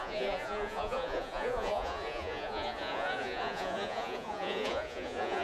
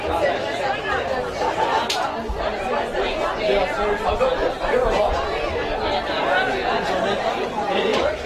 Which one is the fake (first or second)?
first